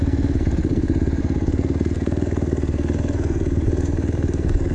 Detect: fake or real fake